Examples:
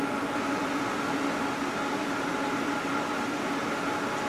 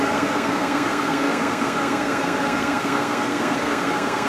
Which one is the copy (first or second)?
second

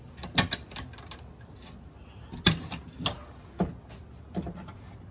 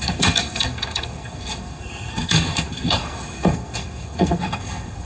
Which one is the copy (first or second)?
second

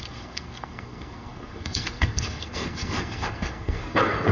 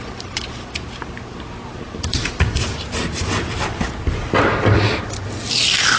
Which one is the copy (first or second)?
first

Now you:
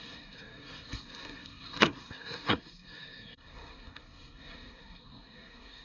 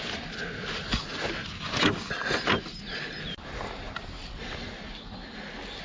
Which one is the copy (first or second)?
first